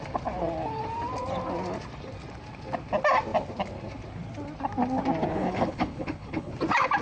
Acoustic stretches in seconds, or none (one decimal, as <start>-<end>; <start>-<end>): 0.0-5.3; 6.5-7.0